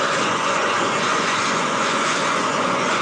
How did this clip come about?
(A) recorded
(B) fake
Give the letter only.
B